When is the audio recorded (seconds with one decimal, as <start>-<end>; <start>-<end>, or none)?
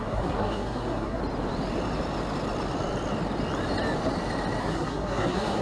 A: 1.2-4.6